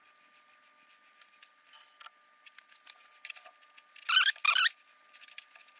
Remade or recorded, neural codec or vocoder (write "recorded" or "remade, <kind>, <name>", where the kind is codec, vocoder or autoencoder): recorded